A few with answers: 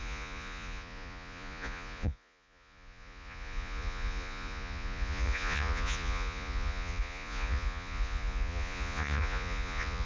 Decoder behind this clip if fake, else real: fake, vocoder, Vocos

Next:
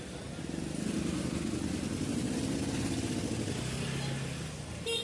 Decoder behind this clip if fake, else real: real